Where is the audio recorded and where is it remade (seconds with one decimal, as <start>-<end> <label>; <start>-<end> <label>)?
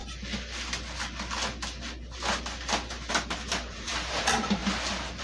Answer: 0.0-3.1 recorded; 3.1-4.6 remade; 4.6-5.2 recorded